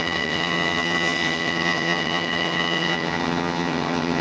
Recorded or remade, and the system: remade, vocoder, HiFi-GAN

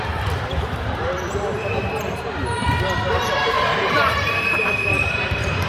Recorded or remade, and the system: remade, vocoder, BigVGAN v2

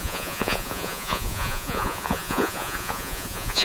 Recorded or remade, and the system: remade, vocoder, Vocos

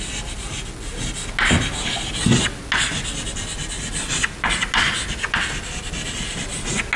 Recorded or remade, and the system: recorded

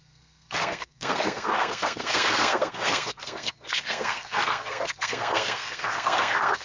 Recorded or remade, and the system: remade, codec, SNAC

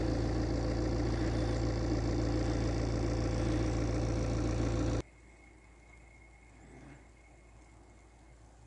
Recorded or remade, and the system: recorded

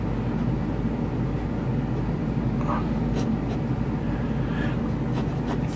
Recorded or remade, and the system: recorded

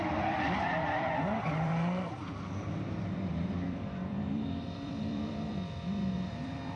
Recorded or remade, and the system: remade, vocoder, BigVGAN v2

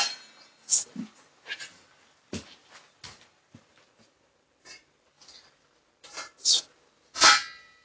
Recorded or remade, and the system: recorded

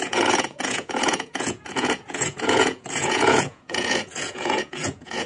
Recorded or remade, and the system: remade, vocoder, Vocos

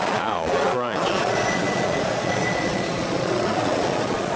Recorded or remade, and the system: remade, vocoder, Vocos